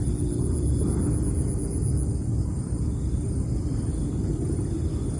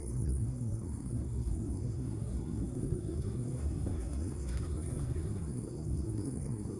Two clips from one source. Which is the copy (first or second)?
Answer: second